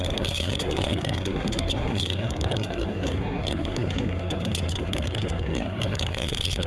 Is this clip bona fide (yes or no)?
no